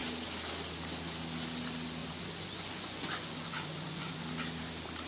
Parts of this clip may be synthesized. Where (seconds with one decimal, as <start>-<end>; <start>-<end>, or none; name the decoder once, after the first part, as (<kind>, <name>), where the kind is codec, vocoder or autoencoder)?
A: 2.0-4.3 (vocoder, Vocos)